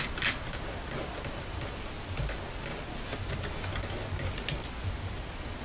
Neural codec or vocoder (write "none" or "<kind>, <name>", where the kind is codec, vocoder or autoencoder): none